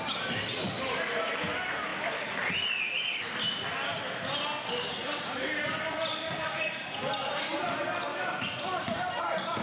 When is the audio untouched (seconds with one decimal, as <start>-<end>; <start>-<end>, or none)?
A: 0.0-1.9; 3.4-8.1; 9.2-9.6